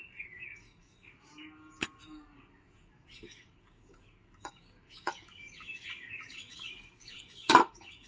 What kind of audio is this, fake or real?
fake